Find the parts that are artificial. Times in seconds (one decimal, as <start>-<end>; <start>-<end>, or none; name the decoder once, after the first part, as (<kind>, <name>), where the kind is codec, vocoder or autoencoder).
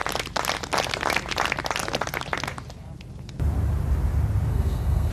4.5-5.1 (codec, SNAC)